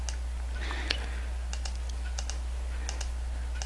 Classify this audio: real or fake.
real